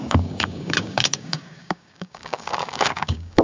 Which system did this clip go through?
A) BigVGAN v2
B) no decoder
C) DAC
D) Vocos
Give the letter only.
C